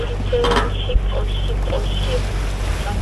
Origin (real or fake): real